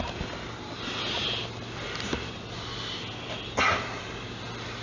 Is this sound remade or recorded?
recorded